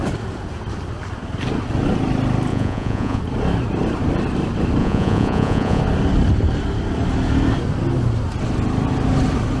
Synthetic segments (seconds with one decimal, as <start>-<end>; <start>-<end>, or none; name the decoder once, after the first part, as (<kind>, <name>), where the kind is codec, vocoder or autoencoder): 2.5-3.2 (vocoder, Vocos); 4.8-5.8